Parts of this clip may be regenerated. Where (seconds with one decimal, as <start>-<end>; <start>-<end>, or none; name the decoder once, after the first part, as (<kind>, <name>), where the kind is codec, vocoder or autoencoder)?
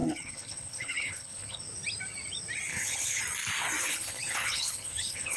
0.0-1.6 (codec, HILCodec); 2.7-3.2; 3.8-5.4